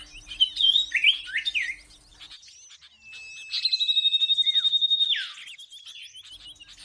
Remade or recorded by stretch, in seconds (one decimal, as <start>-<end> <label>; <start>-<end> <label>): 0.0-6.8 recorded